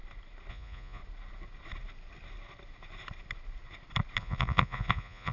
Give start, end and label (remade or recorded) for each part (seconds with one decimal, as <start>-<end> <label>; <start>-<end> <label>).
0.0-0.5 recorded; 0.5-1.0 remade; 1.0-4.2 recorded; 4.2-5.3 remade